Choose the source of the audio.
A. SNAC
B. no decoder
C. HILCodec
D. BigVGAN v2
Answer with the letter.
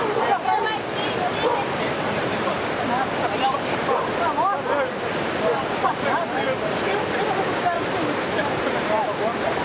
B